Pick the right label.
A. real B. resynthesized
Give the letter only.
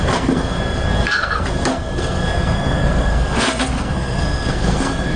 B